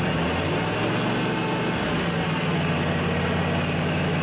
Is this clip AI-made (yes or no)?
no